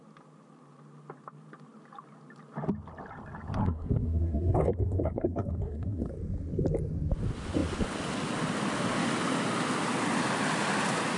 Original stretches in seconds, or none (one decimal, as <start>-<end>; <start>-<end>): 0.0-3.6; 6.1-11.2